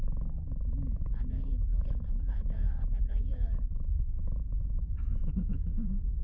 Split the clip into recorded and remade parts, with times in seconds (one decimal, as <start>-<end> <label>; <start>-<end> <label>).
0.0-4.4 remade; 4.4-5.3 recorded; 5.3-6.2 remade